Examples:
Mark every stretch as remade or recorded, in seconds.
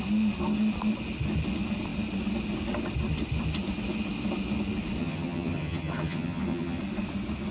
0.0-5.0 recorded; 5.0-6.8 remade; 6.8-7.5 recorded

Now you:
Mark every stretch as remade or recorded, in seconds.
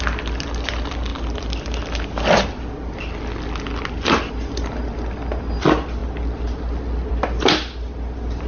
0.0-8.5 recorded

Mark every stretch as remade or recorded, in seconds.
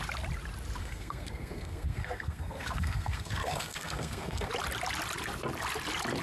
0.0-0.8 recorded; 0.8-4.5 remade; 4.5-6.2 recorded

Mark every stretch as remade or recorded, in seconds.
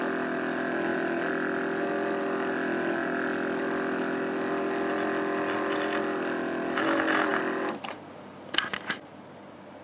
0.0-9.8 recorded